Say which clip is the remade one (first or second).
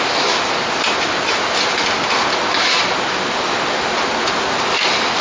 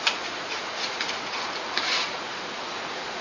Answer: second